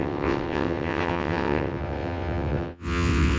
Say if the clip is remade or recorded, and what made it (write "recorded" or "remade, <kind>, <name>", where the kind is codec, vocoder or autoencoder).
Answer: remade, vocoder, WaveNeXt